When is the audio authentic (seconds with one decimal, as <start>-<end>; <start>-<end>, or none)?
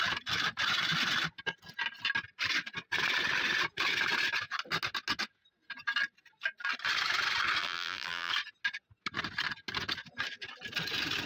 0.0-7.6; 8.3-11.3